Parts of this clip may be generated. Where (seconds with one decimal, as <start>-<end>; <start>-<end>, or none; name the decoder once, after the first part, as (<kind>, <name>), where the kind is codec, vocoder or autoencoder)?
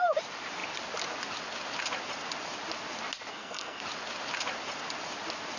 3.3-3.8 (codec, SNAC)